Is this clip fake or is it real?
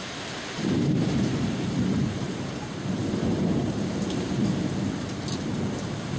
fake